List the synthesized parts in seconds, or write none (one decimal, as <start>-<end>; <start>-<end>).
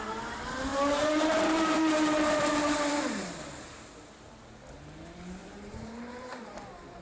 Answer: 0.7-3.2; 5.4-7.0